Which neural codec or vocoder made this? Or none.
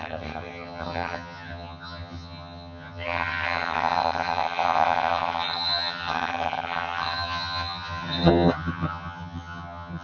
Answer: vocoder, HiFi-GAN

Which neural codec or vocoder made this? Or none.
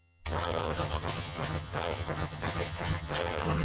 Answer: vocoder, HiFi-GAN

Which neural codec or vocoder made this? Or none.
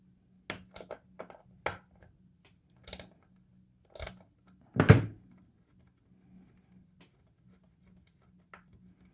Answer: none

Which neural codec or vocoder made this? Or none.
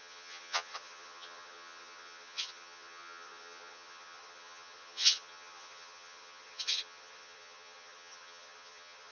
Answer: vocoder, HiFi-GAN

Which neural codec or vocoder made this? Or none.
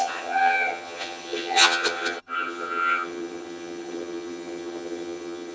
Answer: vocoder, HiFi-GAN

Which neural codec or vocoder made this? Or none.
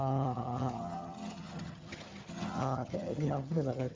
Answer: vocoder, HiFi-GAN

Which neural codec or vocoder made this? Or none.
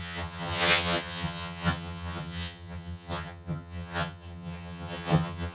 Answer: vocoder, HiFi-GAN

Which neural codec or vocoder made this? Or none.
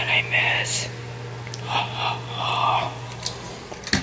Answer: none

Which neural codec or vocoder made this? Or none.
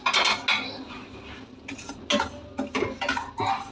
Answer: none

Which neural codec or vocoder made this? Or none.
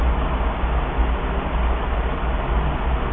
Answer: none